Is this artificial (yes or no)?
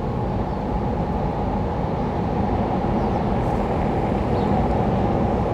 no